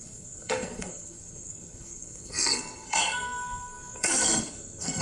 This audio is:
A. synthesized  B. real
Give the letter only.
A